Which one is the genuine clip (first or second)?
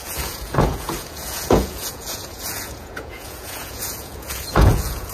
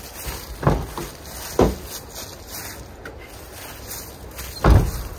second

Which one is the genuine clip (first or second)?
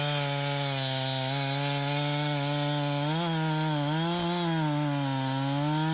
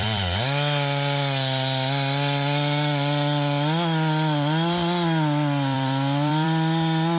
first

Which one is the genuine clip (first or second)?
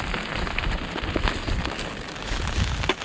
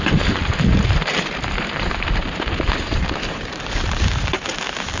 first